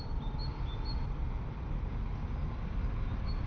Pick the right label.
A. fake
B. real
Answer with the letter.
B